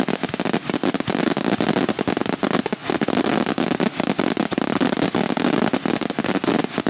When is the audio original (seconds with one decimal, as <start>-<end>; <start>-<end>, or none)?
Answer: 0.0-6.9